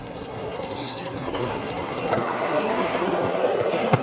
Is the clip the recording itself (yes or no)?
no